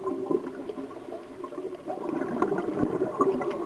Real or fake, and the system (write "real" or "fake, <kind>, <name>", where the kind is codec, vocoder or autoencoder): real